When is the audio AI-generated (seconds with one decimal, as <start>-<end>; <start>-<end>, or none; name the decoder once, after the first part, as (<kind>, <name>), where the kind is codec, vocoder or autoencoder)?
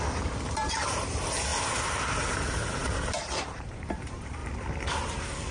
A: 0.0-1.5 (vocoder, BigVGAN v2); 2.2-4.4; 4.9-5.5